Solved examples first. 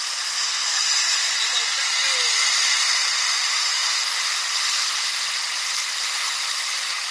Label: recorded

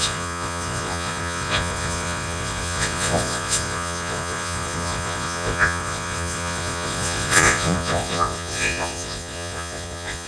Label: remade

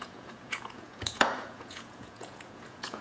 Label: remade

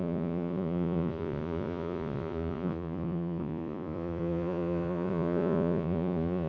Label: remade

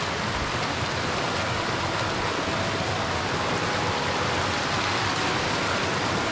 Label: recorded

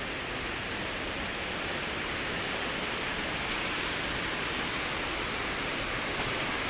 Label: recorded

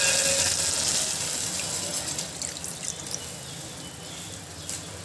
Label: recorded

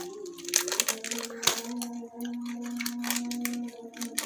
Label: recorded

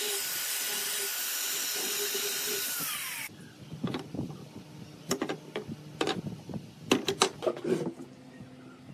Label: recorded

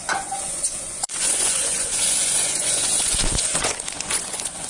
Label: remade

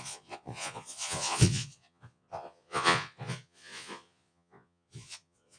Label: remade